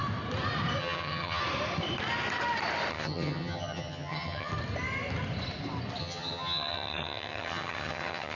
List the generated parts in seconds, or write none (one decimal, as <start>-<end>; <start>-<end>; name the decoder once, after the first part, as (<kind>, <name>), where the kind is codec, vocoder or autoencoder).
0.8-1.4 (vocoder, HiFi-GAN); 2.9-4.5; 6.0-8.3